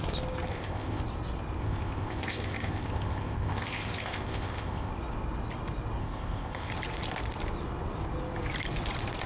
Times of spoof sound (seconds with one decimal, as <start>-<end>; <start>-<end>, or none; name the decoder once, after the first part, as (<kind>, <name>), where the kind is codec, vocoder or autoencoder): 0.5-1.0 (codec, ZipCodec); 1.6-4.9; 6.0-6.7